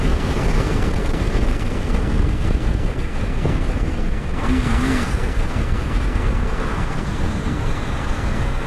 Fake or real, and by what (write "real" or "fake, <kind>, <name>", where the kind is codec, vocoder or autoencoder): fake, codec, SNAC